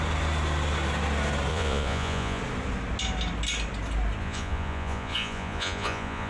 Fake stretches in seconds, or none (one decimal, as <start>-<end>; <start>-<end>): 1.5-2.4; 4.2-6.3